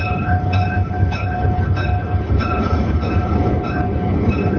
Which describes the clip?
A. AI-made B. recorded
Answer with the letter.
A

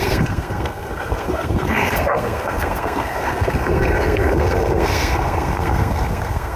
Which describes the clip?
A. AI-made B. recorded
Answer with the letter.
A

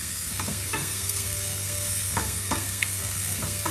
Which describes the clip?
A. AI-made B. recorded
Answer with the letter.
A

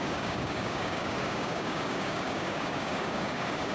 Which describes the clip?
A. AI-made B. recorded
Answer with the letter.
A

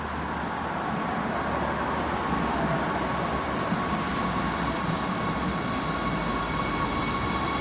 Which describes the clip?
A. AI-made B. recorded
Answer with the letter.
B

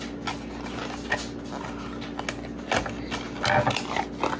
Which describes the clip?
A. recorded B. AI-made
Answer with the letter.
A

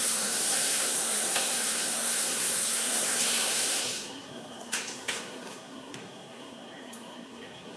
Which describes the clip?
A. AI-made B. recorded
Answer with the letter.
A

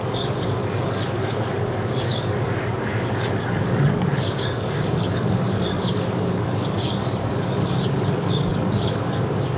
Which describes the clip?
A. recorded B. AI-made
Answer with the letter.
B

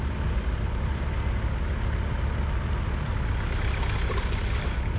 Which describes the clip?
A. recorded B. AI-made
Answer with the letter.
A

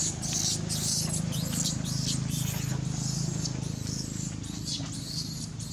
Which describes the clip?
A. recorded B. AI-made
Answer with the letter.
A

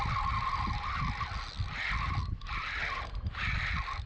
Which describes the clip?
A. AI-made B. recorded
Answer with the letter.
B